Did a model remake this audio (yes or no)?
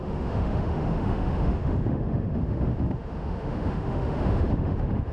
yes